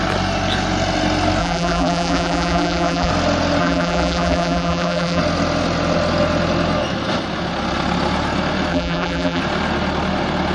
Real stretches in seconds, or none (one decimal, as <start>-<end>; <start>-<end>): 0.0-1.4; 3.1-3.6; 5.2-8.7; 9.4-10.5